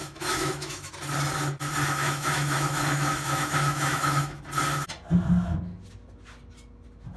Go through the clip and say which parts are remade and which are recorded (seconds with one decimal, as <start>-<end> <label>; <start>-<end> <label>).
0.0-0.9 remade; 0.9-2.0 recorded; 2.0-4.4 remade; 4.4-7.2 recorded